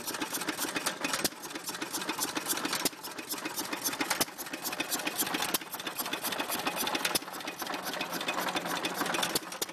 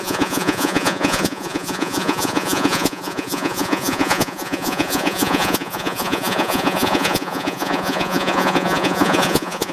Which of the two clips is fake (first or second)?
second